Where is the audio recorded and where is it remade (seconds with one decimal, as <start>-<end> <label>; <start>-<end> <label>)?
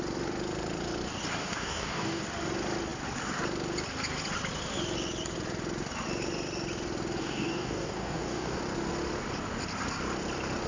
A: 0.0-1.4 recorded; 1.4-2.2 remade; 2.2-7.2 recorded; 7.2-8.6 remade; 8.6-10.7 recorded